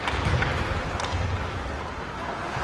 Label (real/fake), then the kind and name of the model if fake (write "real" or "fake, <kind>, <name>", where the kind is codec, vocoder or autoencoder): real